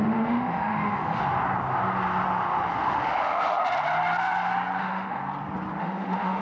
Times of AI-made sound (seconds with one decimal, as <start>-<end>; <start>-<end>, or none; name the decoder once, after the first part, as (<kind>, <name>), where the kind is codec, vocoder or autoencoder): 0.0-1.2 (autoencoder, DAC-VAE); 2.7-3.6; 4.8-5.2; 5.8-6.4